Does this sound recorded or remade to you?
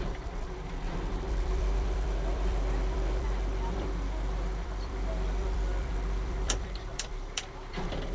remade